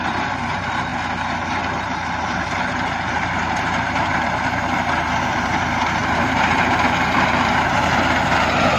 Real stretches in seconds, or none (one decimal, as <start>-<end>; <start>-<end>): 0.9-1.6